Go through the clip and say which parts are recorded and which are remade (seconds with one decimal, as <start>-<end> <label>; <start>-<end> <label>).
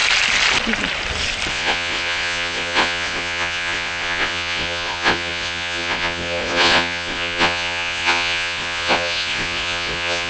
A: 0.0-1.5 recorded; 1.5-10.3 remade